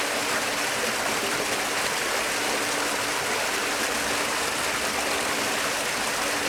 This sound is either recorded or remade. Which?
recorded